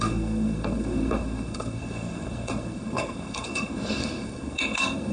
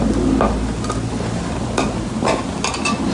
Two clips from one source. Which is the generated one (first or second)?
first